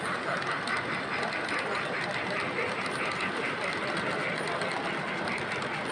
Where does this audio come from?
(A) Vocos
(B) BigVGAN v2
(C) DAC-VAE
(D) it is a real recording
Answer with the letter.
D